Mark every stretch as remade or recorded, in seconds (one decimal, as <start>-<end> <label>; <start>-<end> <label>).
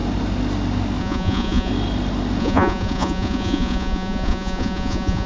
0.0-1.0 recorded; 1.0-1.7 remade; 1.7-2.4 recorded; 2.4-5.3 remade